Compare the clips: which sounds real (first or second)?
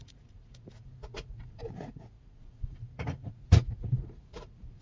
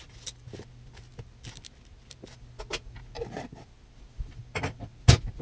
second